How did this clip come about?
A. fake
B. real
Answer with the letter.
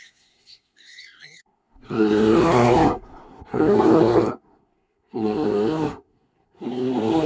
A